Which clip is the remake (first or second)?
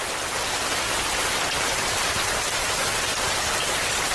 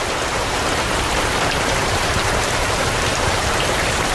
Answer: second